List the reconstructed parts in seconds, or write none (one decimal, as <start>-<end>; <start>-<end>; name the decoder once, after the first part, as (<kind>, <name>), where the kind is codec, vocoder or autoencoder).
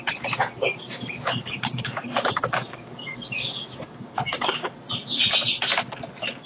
0.6-4.5 (codec, DAC)